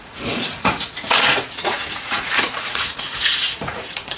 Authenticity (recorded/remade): remade